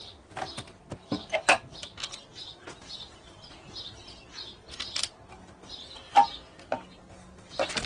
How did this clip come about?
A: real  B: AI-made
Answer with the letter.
A